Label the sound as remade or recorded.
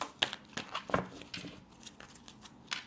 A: recorded